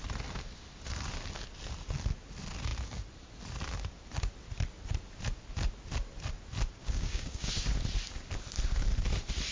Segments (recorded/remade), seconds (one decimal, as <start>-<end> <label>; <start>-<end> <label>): 0.0-6.8 recorded; 6.8-7.5 remade; 7.5-9.5 recorded